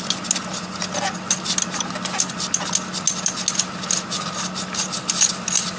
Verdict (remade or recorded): recorded